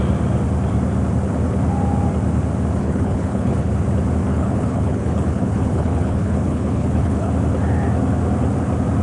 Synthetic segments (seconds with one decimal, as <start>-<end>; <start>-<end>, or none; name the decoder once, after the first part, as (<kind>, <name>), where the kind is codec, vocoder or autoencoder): 2.8-3.7 (codec, HILCodec); 4.3-7.3